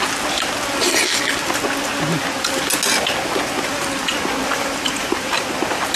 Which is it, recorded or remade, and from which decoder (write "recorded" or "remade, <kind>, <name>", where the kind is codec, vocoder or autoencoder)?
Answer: recorded